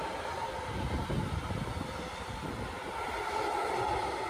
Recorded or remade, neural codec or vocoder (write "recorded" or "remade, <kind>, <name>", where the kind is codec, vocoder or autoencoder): recorded